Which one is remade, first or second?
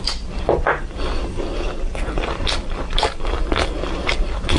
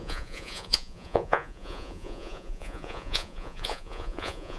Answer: second